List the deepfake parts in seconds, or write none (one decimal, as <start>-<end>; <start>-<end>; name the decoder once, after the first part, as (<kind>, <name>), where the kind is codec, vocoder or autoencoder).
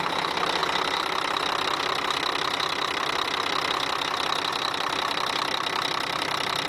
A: none